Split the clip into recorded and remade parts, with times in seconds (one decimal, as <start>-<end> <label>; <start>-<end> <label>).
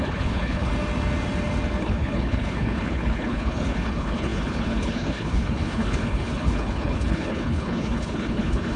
0.0-0.7 remade; 0.7-1.8 recorded; 1.8-8.8 remade